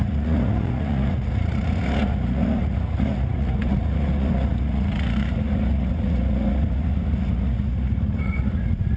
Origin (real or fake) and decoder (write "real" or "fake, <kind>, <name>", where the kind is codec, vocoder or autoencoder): fake, vocoder, Vocos